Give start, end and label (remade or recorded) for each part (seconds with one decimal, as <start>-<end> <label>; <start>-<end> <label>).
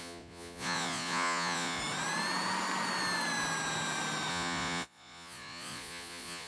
0.0-1.8 remade; 1.8-4.3 recorded; 4.3-6.5 remade